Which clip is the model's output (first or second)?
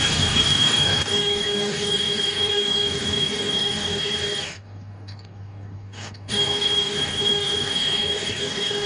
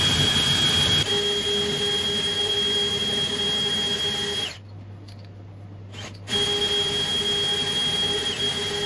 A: first